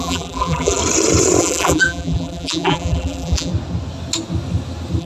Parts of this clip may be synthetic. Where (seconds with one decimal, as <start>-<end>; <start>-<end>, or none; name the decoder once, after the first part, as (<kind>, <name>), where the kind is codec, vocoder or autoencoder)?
0.0-0.8 (vocoder, BigVGAN v2); 1.4-3.5